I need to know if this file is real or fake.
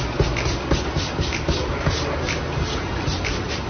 real